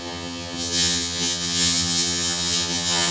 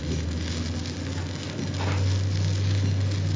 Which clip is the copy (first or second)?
first